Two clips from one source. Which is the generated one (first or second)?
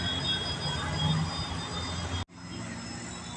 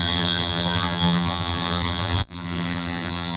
second